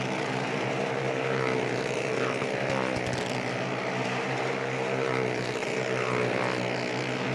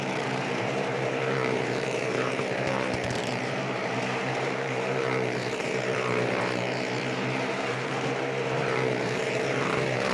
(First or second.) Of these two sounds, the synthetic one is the second